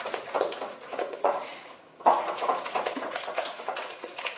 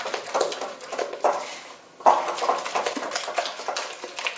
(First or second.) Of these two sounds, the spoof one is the first